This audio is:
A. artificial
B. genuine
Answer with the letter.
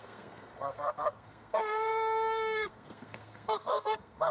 A